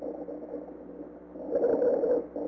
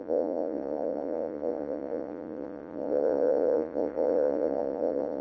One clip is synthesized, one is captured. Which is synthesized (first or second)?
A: second